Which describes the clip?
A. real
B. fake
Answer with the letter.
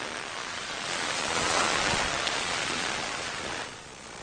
B